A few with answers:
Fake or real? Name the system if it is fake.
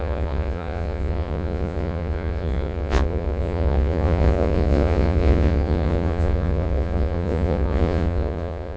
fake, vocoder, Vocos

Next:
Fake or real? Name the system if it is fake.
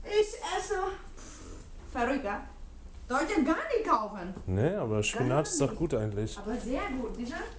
real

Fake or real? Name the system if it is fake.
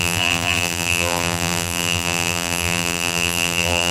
fake, vocoder, BigVGAN v2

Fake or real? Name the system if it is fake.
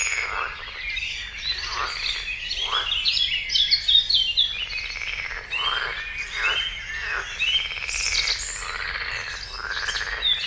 real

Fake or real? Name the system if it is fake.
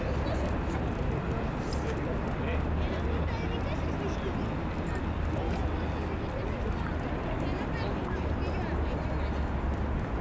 real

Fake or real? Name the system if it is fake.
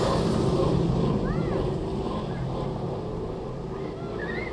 real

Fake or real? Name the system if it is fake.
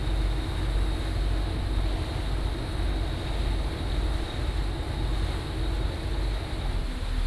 real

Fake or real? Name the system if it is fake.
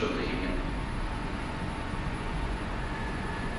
fake, vocoder, Vocos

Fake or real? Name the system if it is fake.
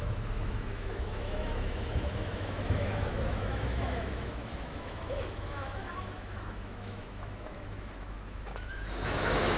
fake, autoencoder, DAC-VAE